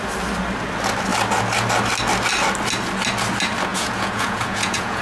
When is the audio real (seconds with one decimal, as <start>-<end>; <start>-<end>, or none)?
0.0-3.7